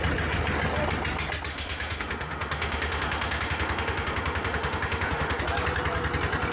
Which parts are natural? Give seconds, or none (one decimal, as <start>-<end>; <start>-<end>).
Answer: 0.0-1.5; 5.4-6.5

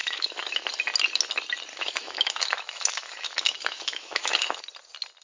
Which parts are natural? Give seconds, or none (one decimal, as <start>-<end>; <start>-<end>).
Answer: 0.6-1.7; 4.6-5.2

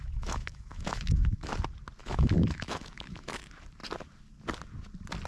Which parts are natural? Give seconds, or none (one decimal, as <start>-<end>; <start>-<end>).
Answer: 1.5-2.0; 3.4-5.3